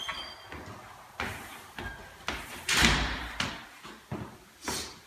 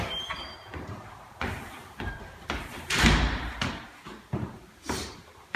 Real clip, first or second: first